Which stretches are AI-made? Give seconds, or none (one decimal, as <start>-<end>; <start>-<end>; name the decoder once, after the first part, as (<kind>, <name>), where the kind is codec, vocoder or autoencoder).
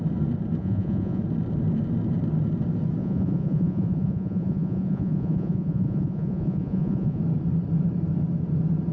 0.6-1.2 (vocoder, Vocos); 3.0-7.2